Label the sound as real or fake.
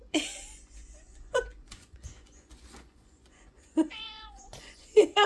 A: fake